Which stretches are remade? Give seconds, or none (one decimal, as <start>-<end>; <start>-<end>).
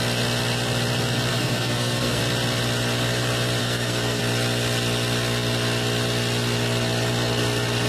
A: 1.3-2.2; 3.6-4.2